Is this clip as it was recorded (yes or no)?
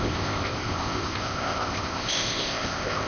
no